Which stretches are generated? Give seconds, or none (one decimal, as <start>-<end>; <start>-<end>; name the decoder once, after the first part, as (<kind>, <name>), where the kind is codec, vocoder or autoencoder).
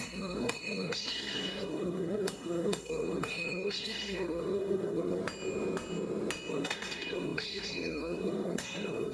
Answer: 0.0-5.2 (codec, SNAC); 6.5-9.1